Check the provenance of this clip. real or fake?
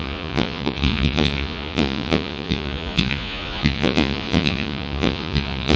fake